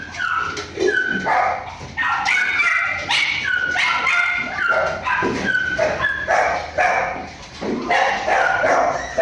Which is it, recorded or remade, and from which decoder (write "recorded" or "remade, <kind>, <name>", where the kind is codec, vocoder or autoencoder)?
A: recorded